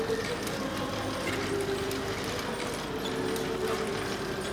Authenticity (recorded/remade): recorded